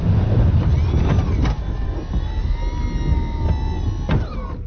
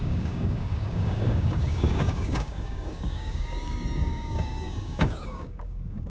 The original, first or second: first